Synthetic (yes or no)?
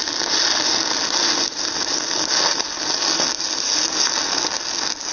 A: no